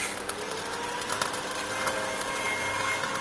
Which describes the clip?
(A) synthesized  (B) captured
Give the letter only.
B